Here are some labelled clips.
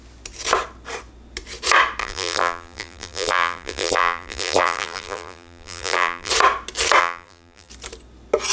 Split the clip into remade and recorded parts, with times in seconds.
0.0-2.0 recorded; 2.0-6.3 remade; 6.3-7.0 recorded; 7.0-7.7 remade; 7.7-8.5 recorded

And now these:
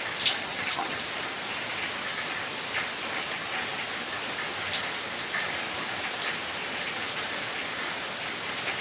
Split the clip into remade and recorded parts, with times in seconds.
0.0-0.4 recorded; 0.4-1.0 remade; 1.0-8.8 recorded

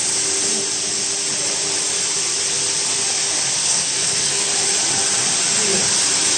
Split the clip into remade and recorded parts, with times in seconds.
0.0-3.6 recorded; 3.6-4.5 remade; 4.5-6.4 recorded

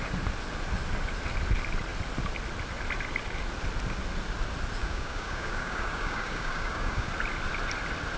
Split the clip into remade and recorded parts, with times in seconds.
0.0-4.8 recorded; 4.8-7.1 remade; 7.1-8.2 recorded

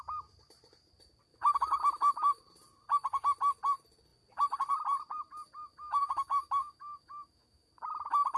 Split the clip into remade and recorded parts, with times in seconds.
0.0-1.3 recorded; 1.3-2.4 remade; 2.4-5.7 recorded; 5.7-7.7 remade; 7.7-8.4 recorded

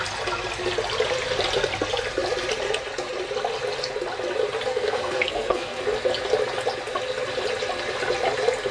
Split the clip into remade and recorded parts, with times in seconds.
0.0-4.7 recorded; 4.7-5.8 remade; 5.8-8.7 recorded

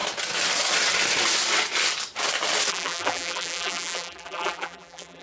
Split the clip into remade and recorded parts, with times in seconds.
0.0-2.7 recorded; 2.7-5.2 remade

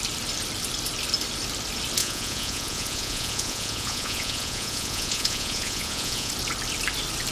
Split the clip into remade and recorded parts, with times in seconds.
0.0-2.0 recorded; 2.0-6.3 remade; 6.3-7.3 recorded